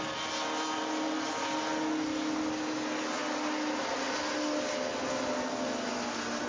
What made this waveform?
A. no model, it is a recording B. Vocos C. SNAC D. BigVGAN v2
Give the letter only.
A